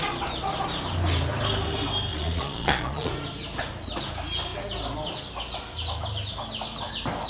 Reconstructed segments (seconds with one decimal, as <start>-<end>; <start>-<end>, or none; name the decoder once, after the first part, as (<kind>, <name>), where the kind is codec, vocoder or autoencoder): 2.1-3.1 (vocoder, Vocos)